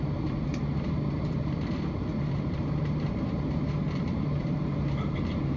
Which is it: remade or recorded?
remade